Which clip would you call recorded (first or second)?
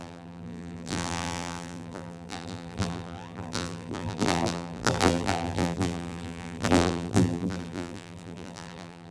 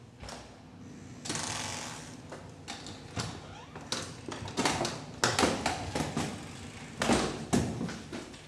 second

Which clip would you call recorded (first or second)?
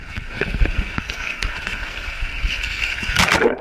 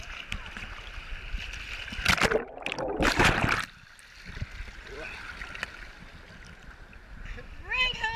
second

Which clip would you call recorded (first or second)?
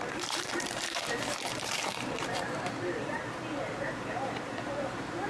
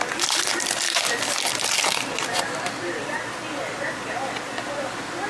second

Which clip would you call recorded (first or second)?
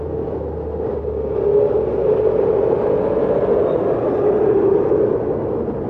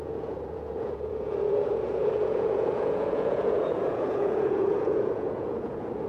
first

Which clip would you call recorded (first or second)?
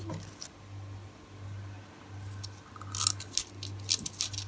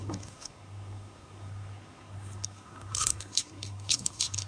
first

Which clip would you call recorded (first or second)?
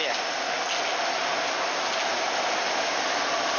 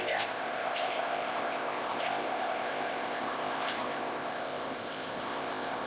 first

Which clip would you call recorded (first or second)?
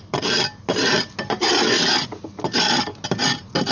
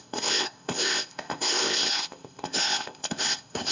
first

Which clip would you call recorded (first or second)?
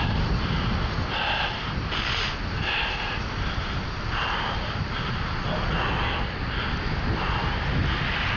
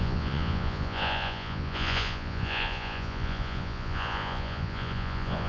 first